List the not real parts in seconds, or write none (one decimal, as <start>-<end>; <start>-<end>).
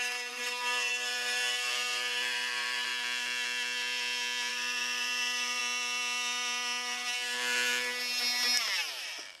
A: 0.0-2.9; 4.5-5.6; 9.0-9.4